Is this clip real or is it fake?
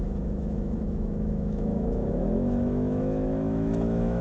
fake